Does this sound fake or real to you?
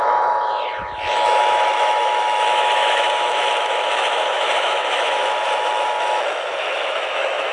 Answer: fake